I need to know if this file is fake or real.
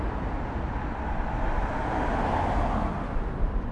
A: real